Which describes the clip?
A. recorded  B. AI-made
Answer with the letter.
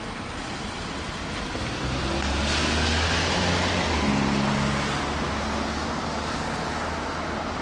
A